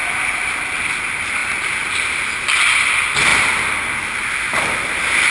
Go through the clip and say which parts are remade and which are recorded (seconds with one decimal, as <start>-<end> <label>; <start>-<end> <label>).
0.0-5.3 recorded